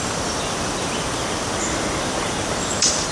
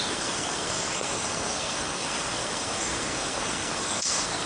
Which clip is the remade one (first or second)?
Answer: second